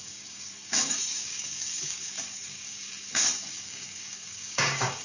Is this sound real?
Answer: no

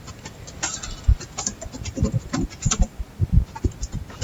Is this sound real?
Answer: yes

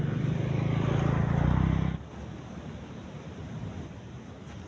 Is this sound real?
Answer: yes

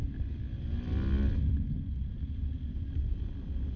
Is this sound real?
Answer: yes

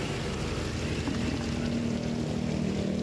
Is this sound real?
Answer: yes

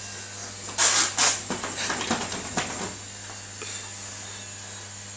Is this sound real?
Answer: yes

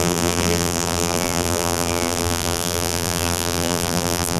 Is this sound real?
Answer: no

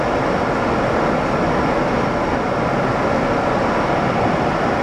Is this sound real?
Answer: yes